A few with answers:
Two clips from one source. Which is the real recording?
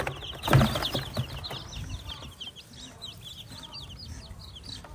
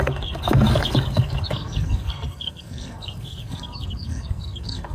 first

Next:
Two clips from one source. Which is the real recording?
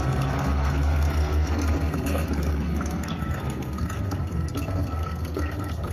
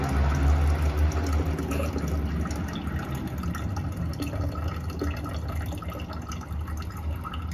second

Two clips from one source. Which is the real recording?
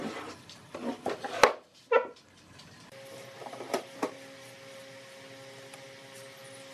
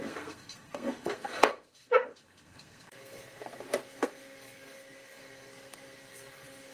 first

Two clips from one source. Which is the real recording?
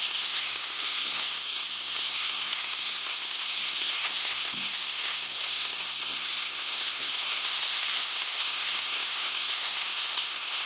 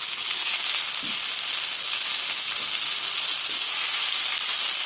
second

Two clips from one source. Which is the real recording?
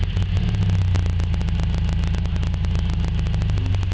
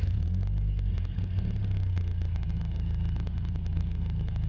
first